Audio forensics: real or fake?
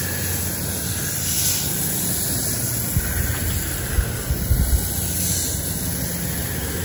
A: real